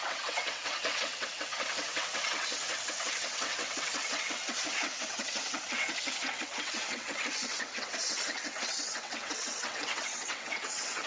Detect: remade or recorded remade